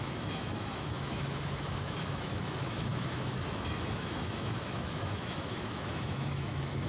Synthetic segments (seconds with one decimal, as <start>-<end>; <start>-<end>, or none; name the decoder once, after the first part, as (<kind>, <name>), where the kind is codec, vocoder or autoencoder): 0.0-6.9 (autoencoder, DAC-VAE)